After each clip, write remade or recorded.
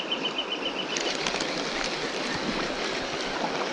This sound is recorded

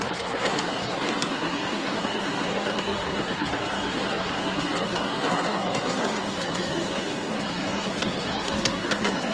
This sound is remade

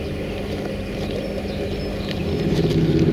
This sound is recorded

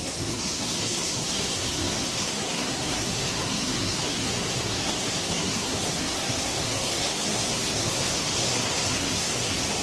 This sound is remade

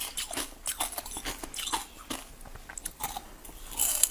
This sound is recorded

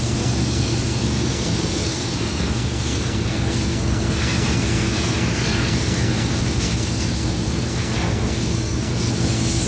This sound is remade